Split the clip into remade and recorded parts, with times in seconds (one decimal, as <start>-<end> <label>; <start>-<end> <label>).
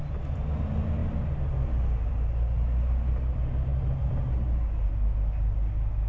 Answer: 0.0-6.1 recorded